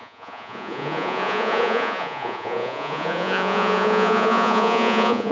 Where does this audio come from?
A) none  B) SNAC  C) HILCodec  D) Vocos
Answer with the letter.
D